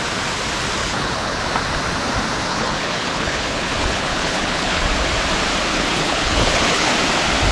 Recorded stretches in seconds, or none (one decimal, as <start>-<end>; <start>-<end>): 0.0-0.8; 1.4-2.5; 4.8-5.7; 6.9-7.5